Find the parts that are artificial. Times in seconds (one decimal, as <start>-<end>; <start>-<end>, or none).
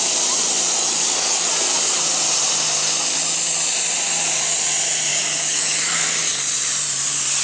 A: 0.8-1.5; 5.1-6.4